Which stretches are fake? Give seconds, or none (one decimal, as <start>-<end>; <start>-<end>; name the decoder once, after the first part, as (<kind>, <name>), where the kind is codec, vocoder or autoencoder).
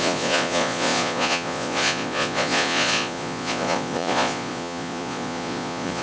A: 0.0-6.0 (vocoder, Vocos)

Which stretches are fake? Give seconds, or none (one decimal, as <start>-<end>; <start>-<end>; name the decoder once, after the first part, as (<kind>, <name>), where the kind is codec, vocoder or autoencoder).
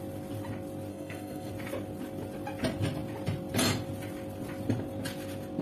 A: 0.9-1.5 (codec, SNAC)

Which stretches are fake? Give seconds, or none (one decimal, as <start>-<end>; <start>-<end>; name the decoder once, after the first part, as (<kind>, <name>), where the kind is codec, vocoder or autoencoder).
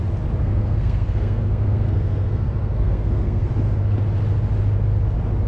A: 0.4-3.5 (codec, SNAC)